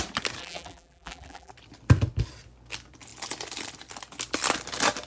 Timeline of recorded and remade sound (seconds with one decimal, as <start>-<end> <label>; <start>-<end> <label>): 0.0-0.4 recorded; 0.4-1.5 remade; 1.5-5.1 recorded